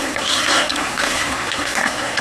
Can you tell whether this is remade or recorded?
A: remade